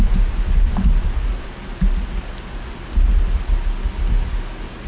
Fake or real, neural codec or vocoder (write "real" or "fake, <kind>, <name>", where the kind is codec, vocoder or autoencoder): real